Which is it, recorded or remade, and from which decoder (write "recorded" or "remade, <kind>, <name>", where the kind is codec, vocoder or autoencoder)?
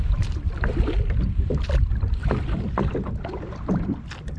recorded